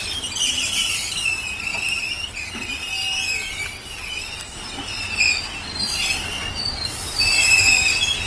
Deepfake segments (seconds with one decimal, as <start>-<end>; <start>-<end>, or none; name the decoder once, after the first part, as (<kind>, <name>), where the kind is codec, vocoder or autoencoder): 0.0-1.1 (vocoder, BigVGAN v2); 1.7-2.5; 3.8-7.9